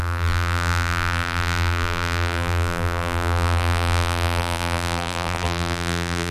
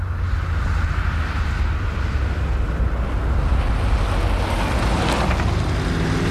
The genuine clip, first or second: second